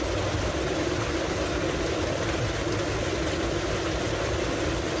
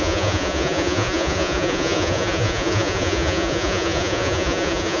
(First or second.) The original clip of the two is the first